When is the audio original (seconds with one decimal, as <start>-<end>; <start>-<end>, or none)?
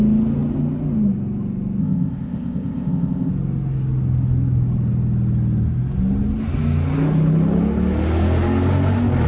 0.0-1.8; 3.3-9.3